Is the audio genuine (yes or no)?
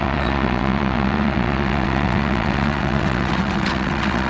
no